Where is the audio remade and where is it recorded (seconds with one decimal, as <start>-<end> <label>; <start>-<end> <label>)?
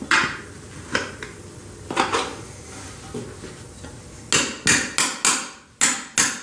0.0-1.0 recorded; 1.0-1.6 remade; 1.6-6.4 recorded